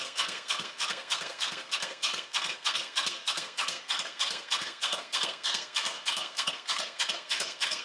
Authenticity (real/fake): fake